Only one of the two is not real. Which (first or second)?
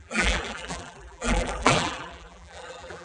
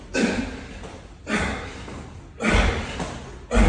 first